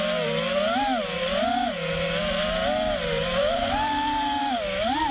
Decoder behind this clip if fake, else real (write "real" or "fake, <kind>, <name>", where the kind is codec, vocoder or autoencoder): real